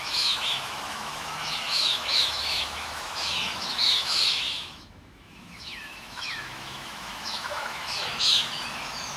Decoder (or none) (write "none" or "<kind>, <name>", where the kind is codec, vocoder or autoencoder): autoencoder, DAC-VAE